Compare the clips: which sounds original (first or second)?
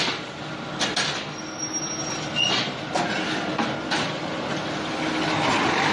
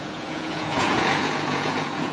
first